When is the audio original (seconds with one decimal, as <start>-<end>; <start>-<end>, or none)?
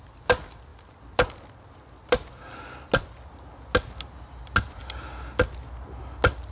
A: 0.0-6.5